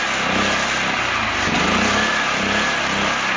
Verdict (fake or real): real